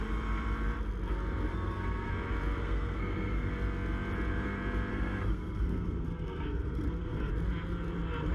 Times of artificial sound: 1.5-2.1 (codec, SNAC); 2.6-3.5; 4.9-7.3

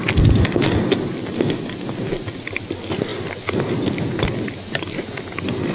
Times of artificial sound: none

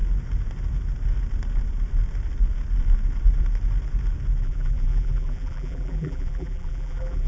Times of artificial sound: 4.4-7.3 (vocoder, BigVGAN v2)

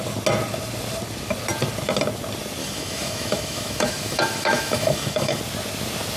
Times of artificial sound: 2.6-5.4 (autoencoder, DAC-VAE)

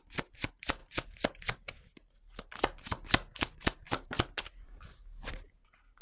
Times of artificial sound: none